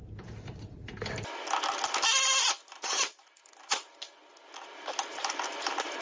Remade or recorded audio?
recorded